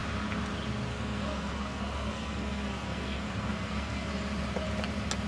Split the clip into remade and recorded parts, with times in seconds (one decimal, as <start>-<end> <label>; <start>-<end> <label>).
0.0-0.9 recorded; 0.9-4.1 remade; 4.1-5.3 recorded